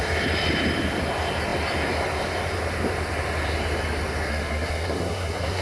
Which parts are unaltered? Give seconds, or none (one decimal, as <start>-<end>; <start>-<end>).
0.0-4.3